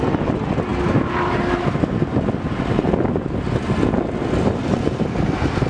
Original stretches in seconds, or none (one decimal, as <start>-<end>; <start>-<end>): 0.0-5.7